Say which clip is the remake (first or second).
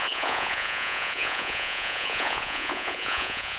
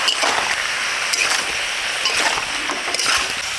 first